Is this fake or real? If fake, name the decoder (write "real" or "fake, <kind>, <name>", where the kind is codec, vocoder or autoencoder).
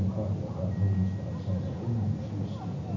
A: real